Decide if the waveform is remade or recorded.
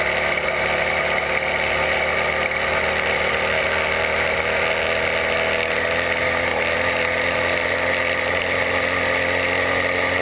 recorded